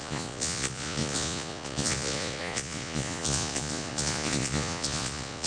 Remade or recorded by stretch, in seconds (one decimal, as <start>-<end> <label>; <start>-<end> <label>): 0.0-5.5 remade